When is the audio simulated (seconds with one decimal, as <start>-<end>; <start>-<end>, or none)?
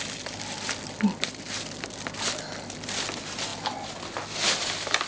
none